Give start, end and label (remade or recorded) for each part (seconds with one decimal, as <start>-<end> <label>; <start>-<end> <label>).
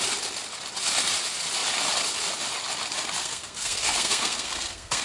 0.0-3.2 recorded; 3.2-5.0 remade